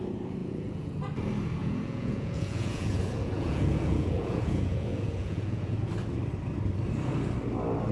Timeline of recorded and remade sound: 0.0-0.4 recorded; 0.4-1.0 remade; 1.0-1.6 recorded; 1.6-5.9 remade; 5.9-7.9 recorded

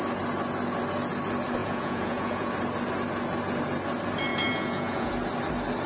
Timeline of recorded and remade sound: 0.0-1.6 recorded; 1.6-2.5 remade; 2.5-4.3 recorded; 4.3-5.1 remade; 5.1-5.9 recorded

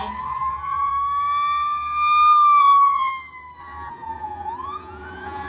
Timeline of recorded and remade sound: 0.0-0.9 remade; 0.9-2.6 recorded; 2.6-3.1 remade; 3.1-3.6 recorded; 3.6-5.5 remade

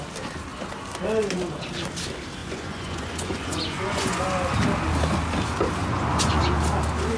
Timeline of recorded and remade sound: 0.0-2.4 recorded; 2.4-4.2 remade; 4.2-5.8 recorded; 5.8-6.4 remade; 6.4-7.2 recorded

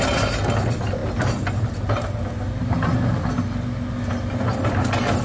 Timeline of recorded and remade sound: 0.0-5.2 recorded

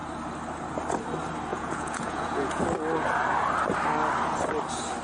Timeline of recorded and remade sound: 0.0-1.5 recorded; 1.5-2.6 remade; 2.6-5.0 recorded